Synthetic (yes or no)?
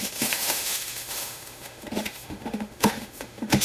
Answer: yes